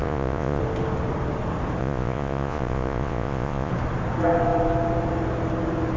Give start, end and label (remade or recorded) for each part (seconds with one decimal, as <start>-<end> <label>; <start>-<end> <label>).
0.0-0.6 remade; 0.6-1.8 recorded; 1.8-3.7 remade; 3.7-6.0 recorded